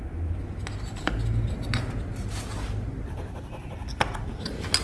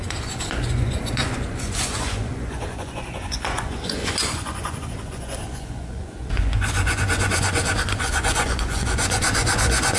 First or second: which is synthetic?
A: second